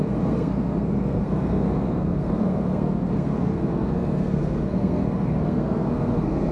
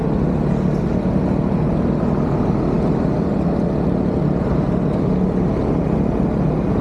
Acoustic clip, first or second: second